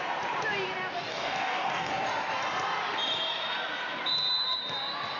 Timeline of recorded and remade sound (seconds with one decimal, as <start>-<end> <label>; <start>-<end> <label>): 0.0-1.1 recorded; 1.1-1.9 remade; 1.9-5.2 recorded